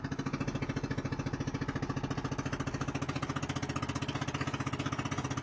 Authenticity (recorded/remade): recorded